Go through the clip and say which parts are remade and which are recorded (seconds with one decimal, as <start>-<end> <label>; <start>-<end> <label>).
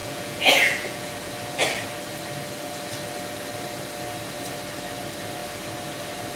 0.0-1.1 remade; 1.1-6.4 recorded